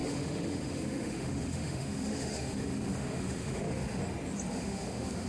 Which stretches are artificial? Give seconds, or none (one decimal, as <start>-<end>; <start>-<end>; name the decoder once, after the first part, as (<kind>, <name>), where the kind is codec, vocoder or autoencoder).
0.0-4.0 (autoencoder, DAC-VAE); 4.5-5.3